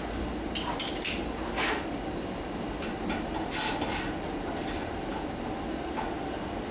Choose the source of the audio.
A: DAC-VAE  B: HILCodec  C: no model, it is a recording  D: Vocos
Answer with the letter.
C